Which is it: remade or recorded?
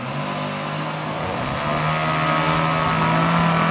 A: recorded